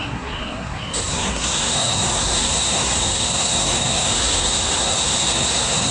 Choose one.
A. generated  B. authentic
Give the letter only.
A